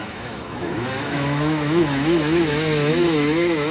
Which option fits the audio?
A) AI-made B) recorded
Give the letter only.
A